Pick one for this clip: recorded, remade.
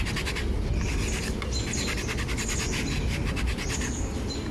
recorded